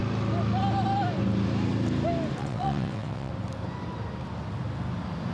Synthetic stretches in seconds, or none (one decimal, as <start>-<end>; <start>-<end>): 2.4-3.3